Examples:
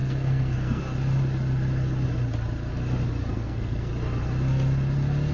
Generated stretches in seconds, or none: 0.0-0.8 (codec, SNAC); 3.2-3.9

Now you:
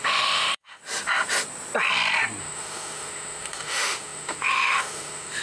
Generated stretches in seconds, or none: 0.0-0.8 (autoencoder, DAC-VAE); 2.4-5.4

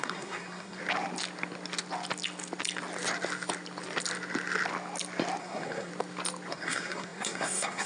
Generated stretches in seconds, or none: 0.0-0.8 (codec, SNAC); 5.4-5.9; 6.5-7.9